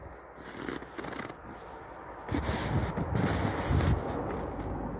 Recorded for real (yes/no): yes